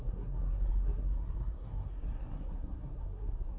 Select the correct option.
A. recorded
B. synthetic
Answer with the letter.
B